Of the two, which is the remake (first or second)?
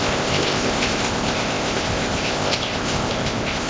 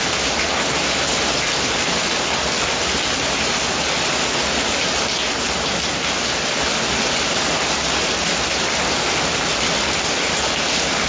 first